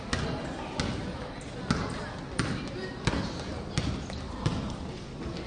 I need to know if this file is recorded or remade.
recorded